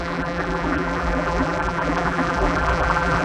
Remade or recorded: remade